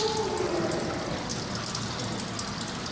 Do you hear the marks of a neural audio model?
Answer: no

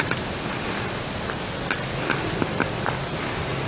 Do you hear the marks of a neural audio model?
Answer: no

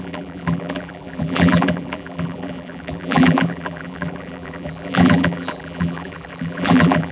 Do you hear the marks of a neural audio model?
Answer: yes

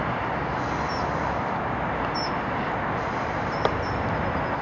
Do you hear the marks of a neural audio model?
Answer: no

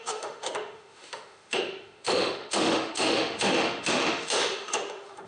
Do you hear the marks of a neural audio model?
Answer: yes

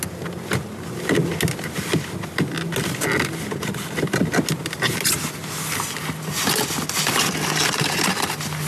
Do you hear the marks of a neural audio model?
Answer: no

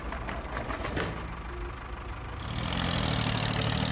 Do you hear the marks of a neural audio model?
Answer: no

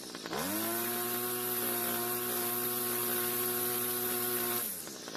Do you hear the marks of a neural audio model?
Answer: no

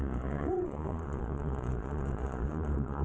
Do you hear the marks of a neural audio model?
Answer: yes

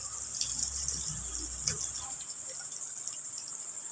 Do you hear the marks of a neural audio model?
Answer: no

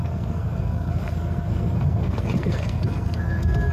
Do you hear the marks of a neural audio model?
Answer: yes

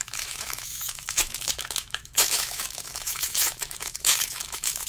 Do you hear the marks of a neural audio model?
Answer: yes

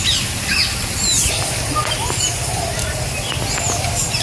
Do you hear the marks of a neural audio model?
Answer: no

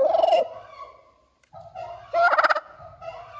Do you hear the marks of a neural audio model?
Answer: no